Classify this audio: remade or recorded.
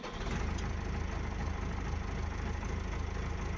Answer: recorded